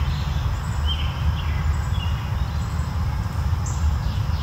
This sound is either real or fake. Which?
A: real